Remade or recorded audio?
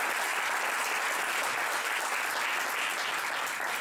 recorded